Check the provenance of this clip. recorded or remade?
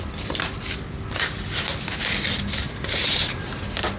recorded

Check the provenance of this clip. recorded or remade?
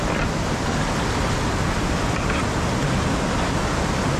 recorded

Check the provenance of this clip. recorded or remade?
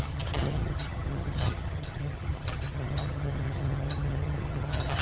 remade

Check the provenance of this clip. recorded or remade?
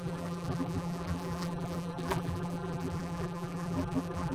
remade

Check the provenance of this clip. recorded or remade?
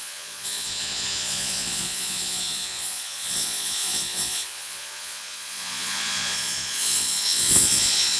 remade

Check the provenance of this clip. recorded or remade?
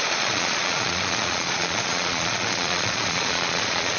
remade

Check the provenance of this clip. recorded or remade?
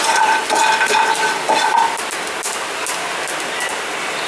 recorded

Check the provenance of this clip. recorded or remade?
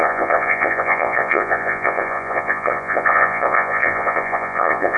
remade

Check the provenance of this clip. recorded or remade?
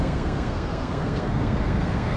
remade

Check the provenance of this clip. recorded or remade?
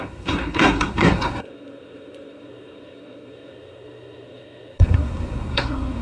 remade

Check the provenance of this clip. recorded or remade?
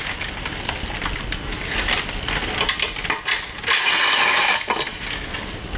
recorded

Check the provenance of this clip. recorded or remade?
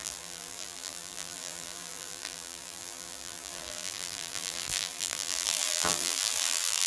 remade